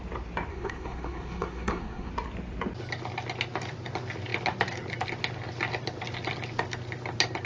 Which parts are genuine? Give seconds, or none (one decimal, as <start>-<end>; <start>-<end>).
0.0-0.5; 2.1-7.5

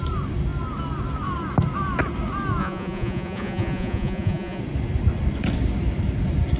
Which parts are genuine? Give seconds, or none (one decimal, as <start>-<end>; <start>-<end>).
0.0-2.6; 4.6-6.6